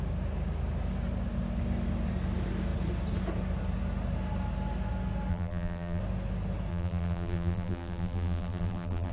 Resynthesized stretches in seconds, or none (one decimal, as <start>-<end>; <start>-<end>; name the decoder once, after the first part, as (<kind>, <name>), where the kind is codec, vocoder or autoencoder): 5.3-6.0 (vocoder, BigVGAN v2); 6.7-9.1